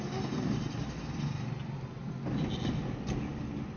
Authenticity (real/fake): real